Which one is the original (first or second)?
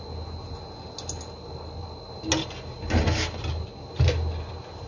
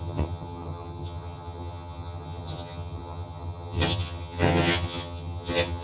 first